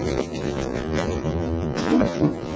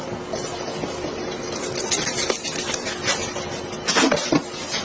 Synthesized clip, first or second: first